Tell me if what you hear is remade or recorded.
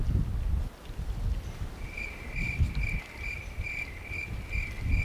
recorded